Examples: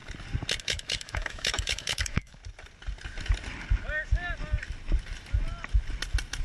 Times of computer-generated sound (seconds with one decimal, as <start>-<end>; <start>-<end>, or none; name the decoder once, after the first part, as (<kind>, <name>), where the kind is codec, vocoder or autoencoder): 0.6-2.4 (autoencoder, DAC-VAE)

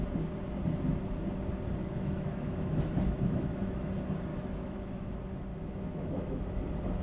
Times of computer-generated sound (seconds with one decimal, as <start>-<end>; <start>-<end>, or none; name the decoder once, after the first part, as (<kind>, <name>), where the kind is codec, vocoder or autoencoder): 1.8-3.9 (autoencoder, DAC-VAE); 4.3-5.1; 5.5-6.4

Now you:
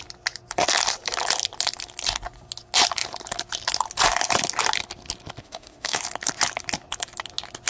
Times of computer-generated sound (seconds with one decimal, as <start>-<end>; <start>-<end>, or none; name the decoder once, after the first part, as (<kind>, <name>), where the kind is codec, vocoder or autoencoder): 5.4-6.0 (autoencoder, DAC-VAE)

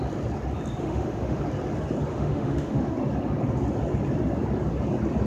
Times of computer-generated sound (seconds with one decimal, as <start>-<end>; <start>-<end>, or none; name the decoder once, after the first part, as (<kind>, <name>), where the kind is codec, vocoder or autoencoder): 0.8-1.4 (autoencoder, DAC-VAE); 2.1-2.9

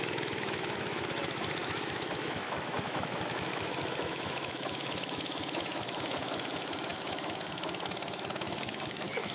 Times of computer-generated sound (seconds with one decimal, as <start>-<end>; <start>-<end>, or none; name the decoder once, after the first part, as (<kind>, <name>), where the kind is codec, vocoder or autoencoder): 0.0-9.3 (autoencoder, DAC-VAE)